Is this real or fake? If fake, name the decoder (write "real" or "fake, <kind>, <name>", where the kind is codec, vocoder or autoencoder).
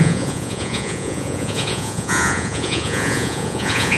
fake, vocoder, Vocos